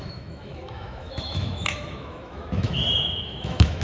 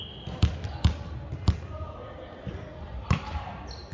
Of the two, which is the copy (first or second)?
first